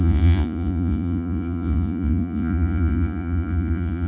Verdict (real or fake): fake